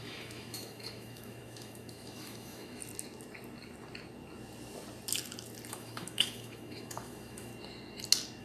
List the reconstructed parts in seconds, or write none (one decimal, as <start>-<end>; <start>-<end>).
0.0-2.8; 5.7-7.5

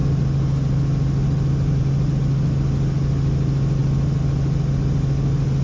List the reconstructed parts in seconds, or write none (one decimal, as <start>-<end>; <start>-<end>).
none

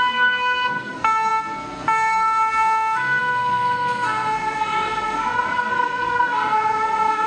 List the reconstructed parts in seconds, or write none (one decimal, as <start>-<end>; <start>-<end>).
0.0-7.3

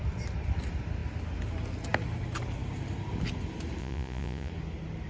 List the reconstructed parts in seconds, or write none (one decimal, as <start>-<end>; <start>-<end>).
3.8-4.5

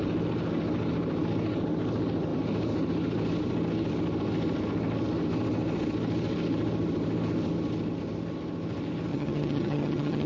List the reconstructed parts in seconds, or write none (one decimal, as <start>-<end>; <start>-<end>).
9.1-10.3

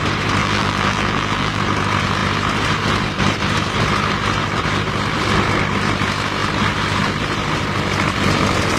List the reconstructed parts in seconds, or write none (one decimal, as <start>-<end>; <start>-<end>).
0.4-1.6

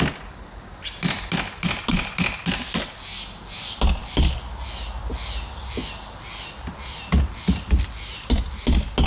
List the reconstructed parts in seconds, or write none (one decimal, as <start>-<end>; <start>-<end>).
none

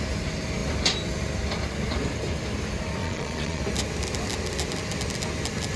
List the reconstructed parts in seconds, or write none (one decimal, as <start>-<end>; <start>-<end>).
3.0-3.6